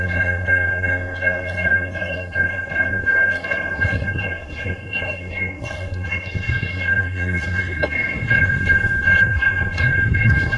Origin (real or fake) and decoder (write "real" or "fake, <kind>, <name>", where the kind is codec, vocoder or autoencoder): fake, codec, SNAC